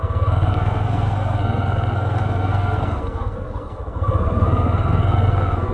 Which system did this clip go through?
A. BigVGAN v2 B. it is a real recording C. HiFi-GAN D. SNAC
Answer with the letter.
D